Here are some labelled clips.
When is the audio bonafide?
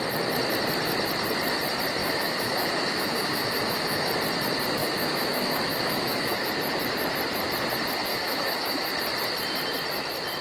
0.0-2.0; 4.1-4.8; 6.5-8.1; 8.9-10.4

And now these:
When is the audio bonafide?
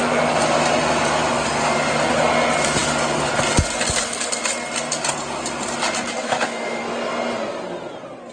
0.0-6.2; 6.8-8.3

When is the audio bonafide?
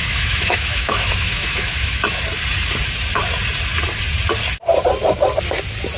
2.2-6.0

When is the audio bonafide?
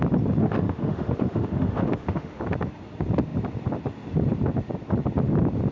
0.0-0.4; 2.4-5.7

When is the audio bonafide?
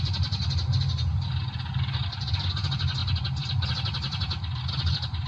0.0-5.3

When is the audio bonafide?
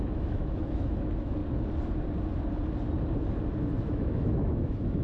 1.4-3.8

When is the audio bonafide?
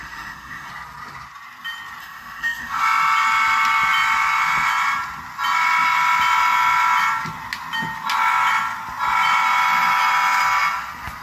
0.7-2.0; 2.8-11.2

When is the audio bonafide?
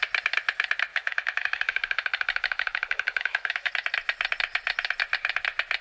0.0-0.9; 3.7-5.8